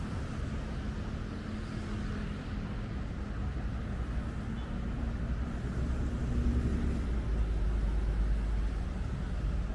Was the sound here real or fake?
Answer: real